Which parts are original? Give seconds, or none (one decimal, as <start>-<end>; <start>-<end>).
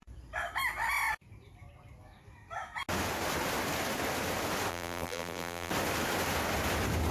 0.0-4.7; 5.7-7.1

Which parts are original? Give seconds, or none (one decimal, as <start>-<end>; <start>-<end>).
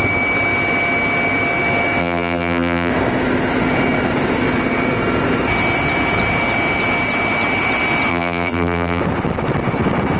0.0-2.0; 2.9-8.1; 9.0-10.2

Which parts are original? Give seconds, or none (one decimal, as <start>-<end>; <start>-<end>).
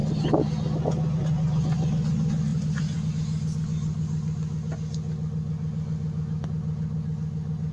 0.0-2.5; 3.1-7.7